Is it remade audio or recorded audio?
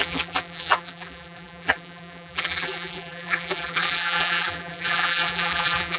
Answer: remade